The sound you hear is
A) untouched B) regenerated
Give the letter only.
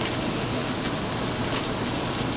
A